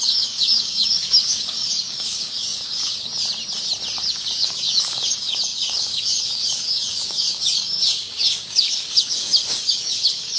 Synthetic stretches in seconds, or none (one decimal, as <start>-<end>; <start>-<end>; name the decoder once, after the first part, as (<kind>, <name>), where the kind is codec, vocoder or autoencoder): 0.0-3.1 (codec, DAC); 4.1-10.4

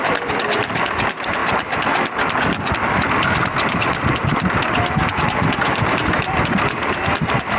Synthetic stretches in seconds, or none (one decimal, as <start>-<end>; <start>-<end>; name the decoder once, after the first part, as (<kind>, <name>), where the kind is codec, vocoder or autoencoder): none

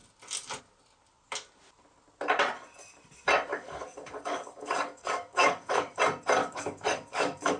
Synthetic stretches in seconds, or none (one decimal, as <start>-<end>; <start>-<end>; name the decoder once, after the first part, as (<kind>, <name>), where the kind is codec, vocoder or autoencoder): 3.5-6.0 (codec, DAC); 6.4-7.6

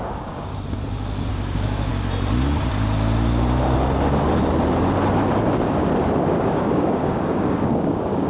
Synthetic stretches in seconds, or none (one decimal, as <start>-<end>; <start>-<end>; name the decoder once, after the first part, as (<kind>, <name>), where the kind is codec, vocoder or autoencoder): 0.0-0.5 (codec, DAC); 1.3-1.9; 6.2-8.3